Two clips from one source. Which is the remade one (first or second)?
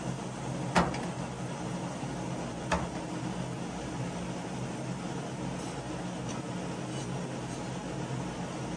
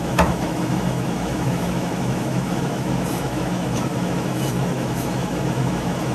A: second